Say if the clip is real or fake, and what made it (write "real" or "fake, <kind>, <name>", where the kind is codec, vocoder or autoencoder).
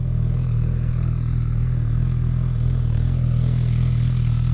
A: fake, codec, SNAC